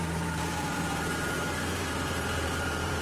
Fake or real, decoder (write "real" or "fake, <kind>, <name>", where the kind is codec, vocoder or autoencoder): fake, vocoder, BigVGAN v2